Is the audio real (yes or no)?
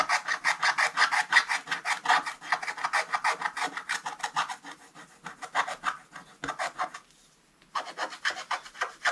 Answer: yes